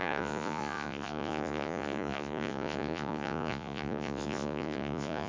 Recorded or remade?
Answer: remade